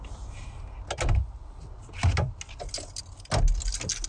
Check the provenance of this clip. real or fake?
real